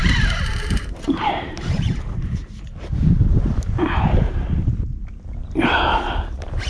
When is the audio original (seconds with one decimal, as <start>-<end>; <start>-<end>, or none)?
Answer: 2.4-6.7